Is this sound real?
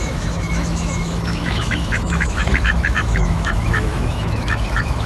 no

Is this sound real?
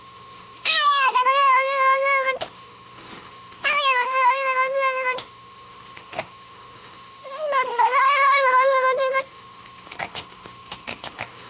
no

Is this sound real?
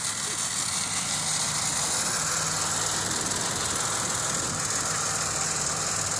yes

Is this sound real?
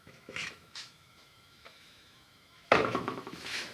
no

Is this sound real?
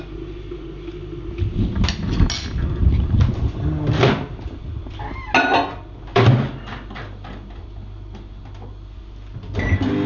yes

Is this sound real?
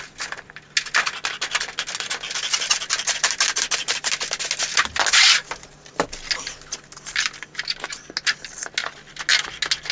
yes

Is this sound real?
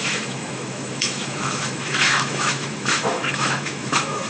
no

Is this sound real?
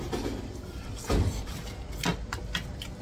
yes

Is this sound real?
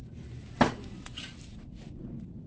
yes